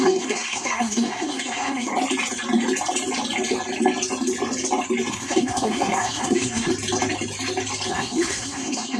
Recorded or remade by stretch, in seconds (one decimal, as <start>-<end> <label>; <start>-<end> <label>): 0.0-1.9 remade; 1.9-5.1 recorded; 5.1-6.7 remade; 6.7-7.9 recorded; 7.9-9.0 remade